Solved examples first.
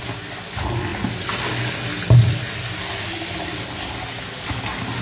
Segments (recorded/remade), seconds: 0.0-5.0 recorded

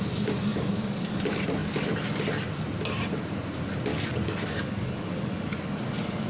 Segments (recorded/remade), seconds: 0.0-0.5 recorded; 0.5-1.2 remade; 1.2-3.9 recorded; 3.9-6.3 remade

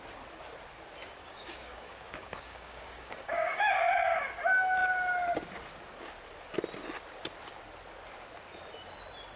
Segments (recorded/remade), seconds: 0.0-1.2 recorded; 1.2-4.3 remade; 4.3-9.4 recorded